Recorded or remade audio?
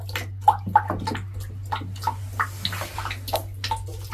recorded